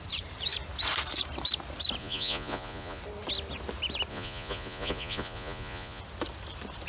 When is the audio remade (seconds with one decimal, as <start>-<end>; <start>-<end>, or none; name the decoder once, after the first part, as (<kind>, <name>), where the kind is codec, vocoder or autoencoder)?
2.0-3.0 (vocoder, Vocos); 4.1-6.0